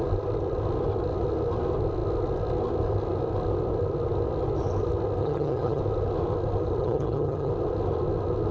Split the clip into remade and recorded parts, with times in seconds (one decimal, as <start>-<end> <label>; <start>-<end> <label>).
0.0-5.2 recorded; 5.2-5.8 remade; 5.8-6.8 recorded; 6.8-7.5 remade; 7.5-8.5 recorded